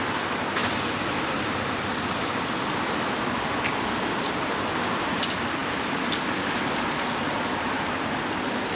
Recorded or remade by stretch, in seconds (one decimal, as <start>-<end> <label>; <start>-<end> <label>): 0.0-0.6 recorded; 0.6-2.9 remade; 2.9-8.8 recorded